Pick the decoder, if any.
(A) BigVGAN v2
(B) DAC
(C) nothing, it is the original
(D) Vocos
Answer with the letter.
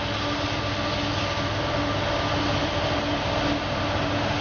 C